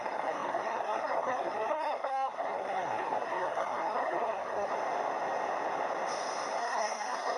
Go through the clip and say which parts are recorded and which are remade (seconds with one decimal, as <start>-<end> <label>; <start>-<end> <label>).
0.0-4.7 remade; 4.7-6.6 recorded; 6.6-7.4 remade